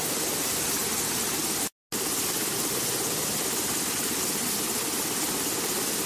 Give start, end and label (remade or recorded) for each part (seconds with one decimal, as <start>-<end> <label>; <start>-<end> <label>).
0.0-6.1 recorded